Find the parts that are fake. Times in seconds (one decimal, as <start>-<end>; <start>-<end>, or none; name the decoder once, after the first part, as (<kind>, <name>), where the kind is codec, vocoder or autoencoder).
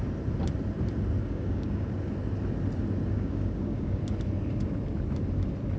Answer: 1.2-1.9 (codec, DAC); 3.1-4.0